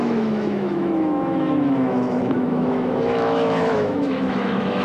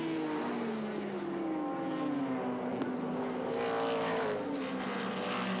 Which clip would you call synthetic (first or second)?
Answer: first